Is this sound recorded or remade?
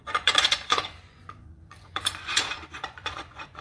remade